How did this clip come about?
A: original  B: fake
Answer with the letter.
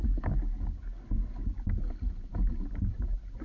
A